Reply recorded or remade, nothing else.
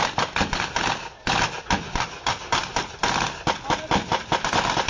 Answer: recorded